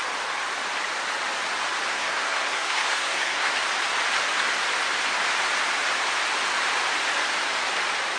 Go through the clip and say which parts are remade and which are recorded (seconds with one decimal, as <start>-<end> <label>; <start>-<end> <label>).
0.0-1.9 recorded; 1.9-3.5 remade; 3.5-8.2 recorded